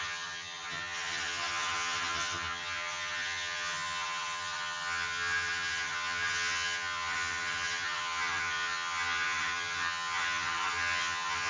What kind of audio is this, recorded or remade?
remade